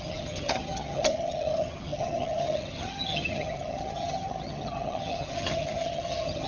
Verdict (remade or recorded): remade